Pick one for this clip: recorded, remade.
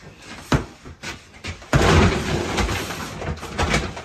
remade